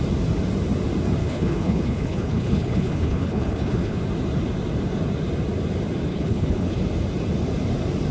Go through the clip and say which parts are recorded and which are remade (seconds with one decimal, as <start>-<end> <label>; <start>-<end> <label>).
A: 0.0-1.2 recorded; 1.2-4.0 remade; 4.0-6.1 recorded; 6.1-6.8 remade; 6.8-8.1 recorded